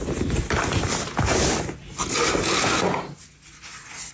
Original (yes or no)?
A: yes